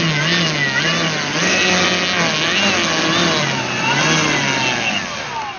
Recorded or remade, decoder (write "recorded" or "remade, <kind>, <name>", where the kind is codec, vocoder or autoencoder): recorded